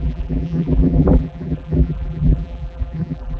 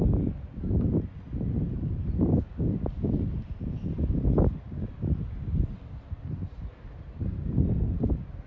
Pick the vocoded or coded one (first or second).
first